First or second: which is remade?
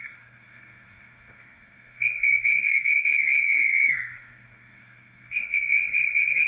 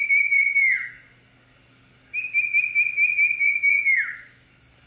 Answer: first